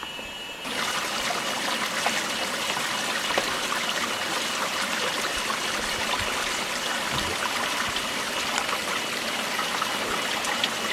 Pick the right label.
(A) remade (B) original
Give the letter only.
A